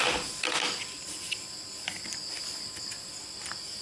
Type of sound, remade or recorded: recorded